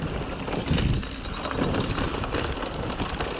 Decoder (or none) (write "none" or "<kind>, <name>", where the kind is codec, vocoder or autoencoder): none